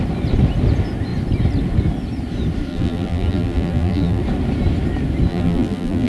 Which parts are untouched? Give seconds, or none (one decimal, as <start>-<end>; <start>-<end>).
0.0-2.7; 4.2-5.3